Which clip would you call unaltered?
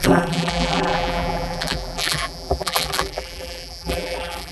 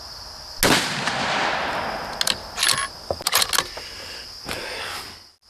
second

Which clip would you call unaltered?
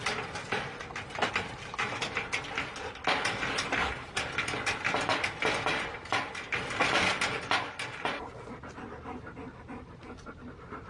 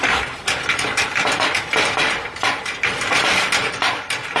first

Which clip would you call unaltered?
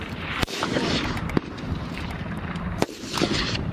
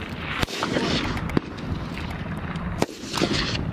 second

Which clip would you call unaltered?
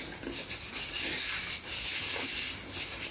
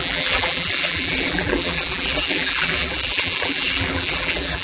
first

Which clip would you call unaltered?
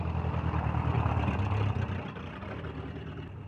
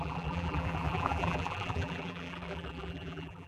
first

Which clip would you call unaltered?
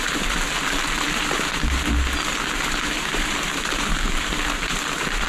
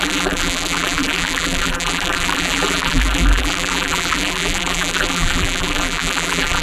first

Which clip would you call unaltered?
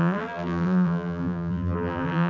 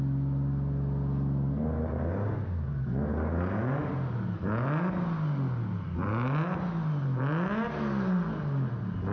second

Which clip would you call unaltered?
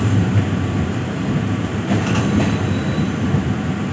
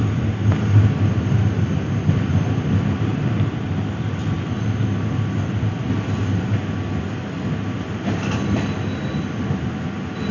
second